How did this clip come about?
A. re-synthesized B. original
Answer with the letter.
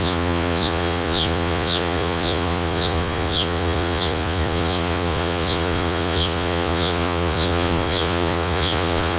A